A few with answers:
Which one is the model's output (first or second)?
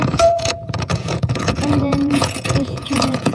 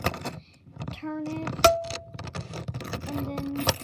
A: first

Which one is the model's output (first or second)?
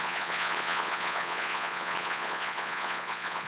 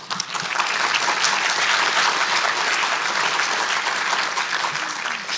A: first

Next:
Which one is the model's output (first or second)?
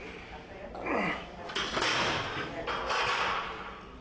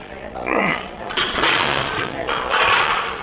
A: second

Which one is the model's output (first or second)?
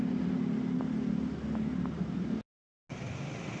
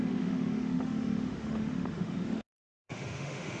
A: second